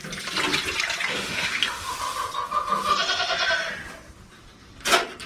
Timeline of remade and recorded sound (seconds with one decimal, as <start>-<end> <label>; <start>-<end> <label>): 0.0-1.1 recorded; 1.1-1.9 remade; 1.9-5.3 recorded